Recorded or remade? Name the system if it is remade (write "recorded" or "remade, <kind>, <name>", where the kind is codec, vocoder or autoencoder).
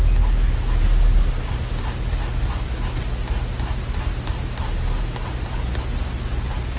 recorded